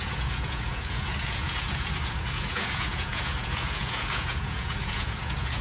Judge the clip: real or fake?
fake